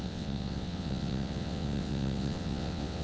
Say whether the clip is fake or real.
fake